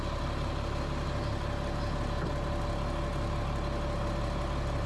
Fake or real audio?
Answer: real